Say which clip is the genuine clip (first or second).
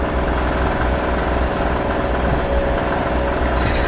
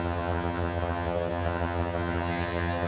first